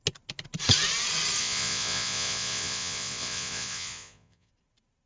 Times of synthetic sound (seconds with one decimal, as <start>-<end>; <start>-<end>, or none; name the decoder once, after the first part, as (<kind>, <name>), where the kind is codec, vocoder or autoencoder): 1.4-4.5 (vocoder, Vocos)